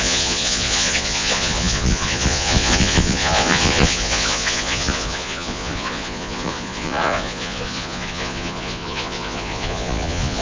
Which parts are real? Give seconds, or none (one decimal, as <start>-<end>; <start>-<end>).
none